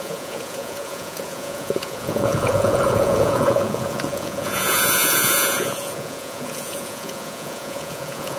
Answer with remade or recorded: remade